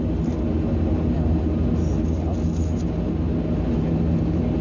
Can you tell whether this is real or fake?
real